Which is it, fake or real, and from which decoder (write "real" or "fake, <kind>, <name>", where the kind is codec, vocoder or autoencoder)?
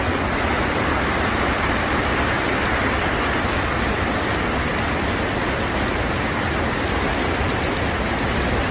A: real